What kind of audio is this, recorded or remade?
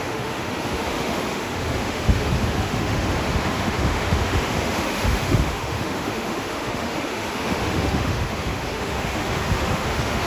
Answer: remade